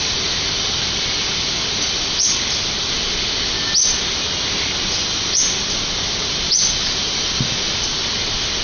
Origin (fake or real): real